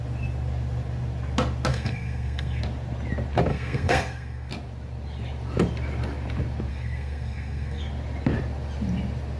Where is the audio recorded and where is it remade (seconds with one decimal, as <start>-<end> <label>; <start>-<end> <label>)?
0.0-1.7 recorded; 1.7-2.6 remade; 2.6-3.5 recorded; 3.5-4.5 remade; 4.5-6.7 recorded; 6.7-7.8 remade; 7.8-9.4 recorded